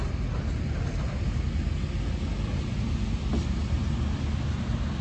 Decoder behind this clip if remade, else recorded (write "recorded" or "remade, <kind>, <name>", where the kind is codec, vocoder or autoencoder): recorded